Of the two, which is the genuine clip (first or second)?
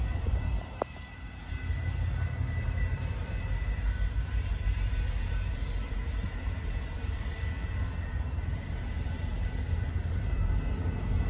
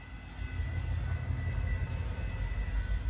second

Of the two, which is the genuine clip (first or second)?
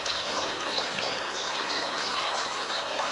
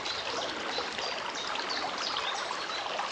second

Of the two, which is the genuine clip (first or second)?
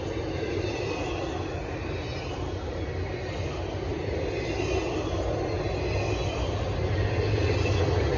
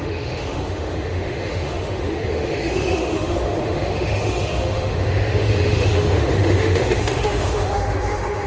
first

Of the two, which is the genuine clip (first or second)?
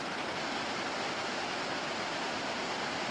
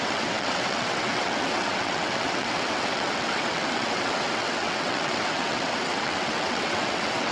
first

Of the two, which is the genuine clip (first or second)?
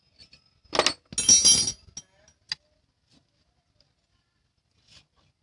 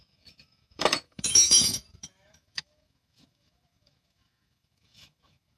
first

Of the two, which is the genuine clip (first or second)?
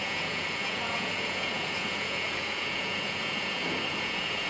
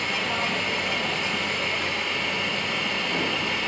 second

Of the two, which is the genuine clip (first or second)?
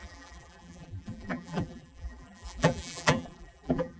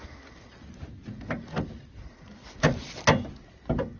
second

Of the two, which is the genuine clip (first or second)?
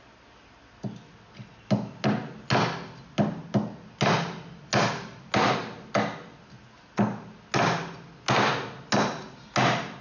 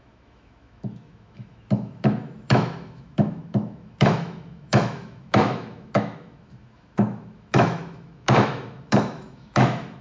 first